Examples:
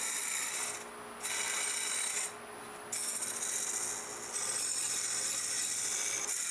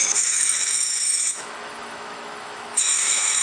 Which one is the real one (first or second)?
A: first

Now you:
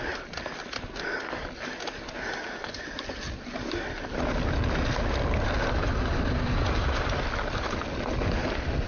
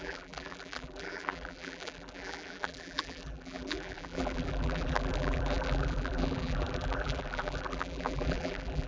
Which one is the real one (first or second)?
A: first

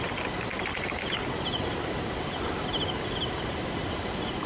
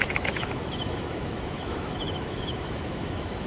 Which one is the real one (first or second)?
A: first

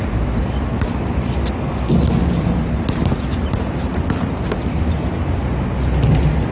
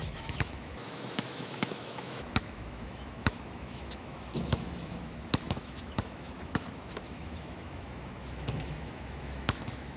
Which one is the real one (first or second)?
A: first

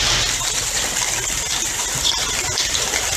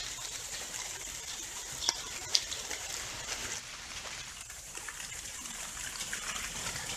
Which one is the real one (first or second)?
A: first